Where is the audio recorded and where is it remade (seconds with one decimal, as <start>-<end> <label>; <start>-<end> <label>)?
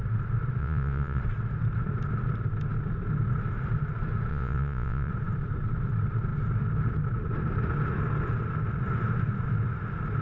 0.0-0.6 recorded; 0.6-1.2 remade; 1.2-4.3 recorded; 4.3-5.1 remade; 5.1-10.2 recorded